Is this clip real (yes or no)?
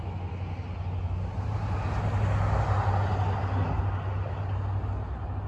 yes